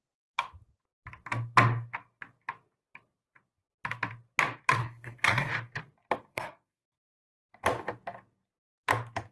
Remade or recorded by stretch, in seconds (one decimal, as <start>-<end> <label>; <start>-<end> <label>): 0.0-4.8 recorded; 4.8-5.5 remade; 5.5-6.3 recorded; 6.3-7.2 remade; 7.2-9.3 recorded